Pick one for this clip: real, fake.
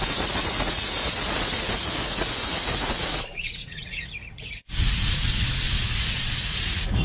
fake